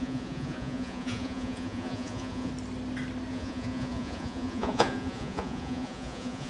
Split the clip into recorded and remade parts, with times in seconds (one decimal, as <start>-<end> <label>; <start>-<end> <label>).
0.0-2.5 remade; 2.5-3.3 recorded; 3.3-6.5 remade